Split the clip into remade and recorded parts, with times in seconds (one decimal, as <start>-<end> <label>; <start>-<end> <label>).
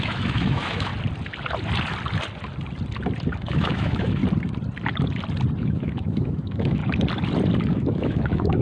0.0-0.9 remade; 0.9-3.4 recorded; 3.4-4.2 remade; 4.2-5.6 recorded; 5.6-6.8 remade; 6.8-7.7 recorded; 7.7-8.6 remade